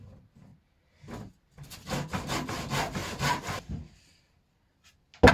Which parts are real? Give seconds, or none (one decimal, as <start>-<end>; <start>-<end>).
0.0-5.3